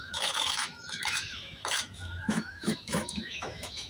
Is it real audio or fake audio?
fake